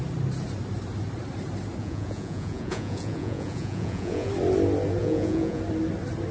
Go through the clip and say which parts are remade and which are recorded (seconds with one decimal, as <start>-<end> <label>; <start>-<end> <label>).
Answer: 0.0-1.8 recorded; 1.8-4.3 remade; 4.3-5.0 recorded; 5.0-5.6 remade; 5.6-6.3 recorded